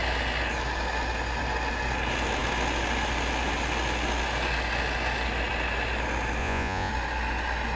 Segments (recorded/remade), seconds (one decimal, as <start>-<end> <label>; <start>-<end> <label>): 0.0-6.4 recorded; 6.4-6.9 remade; 6.9-7.8 recorded